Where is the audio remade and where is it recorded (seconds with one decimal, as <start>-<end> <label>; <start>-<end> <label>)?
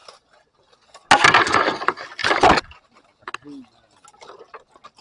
0.0-2.2 recorded; 2.2-3.0 remade; 3.0-5.0 recorded